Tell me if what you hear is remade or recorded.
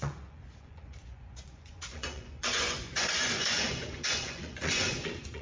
remade